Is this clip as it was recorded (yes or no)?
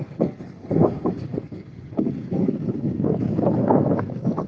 no